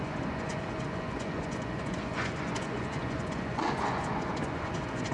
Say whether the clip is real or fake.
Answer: fake